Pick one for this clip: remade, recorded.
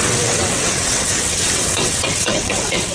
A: remade